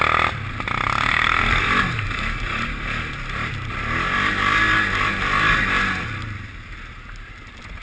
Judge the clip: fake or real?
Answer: real